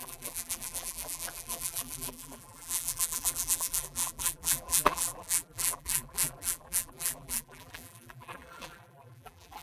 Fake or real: fake